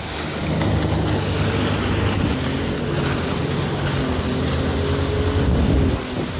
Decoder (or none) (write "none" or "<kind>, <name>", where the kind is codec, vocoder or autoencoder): none